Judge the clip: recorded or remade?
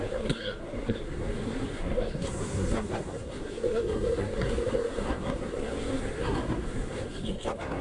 remade